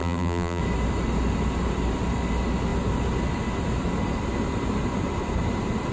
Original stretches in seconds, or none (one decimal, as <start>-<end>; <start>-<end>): 0.6-5.9